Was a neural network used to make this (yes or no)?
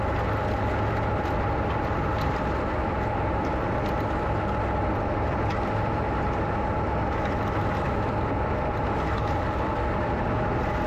no